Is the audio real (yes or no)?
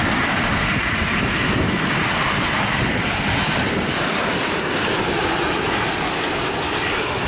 yes